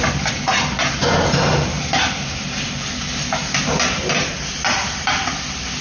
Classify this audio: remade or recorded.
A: recorded